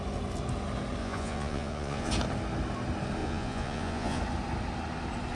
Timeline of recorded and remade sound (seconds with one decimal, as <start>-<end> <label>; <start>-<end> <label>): 0.0-1.0 recorded; 1.0-2.1 remade; 2.1-3.2 recorded; 3.2-4.2 remade; 4.2-5.4 recorded